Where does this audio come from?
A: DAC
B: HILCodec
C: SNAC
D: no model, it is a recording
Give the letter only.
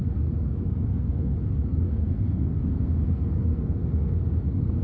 C